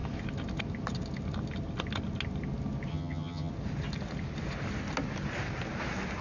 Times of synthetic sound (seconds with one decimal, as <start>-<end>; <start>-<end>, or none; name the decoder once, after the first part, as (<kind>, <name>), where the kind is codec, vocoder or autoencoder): 2.9-3.5 (vocoder, HiFi-GAN)